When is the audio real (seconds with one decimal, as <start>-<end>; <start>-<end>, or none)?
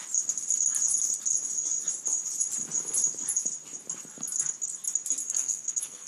0.0-5.2